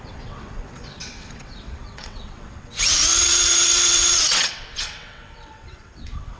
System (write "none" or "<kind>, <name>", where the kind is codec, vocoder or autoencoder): vocoder, WaveNeXt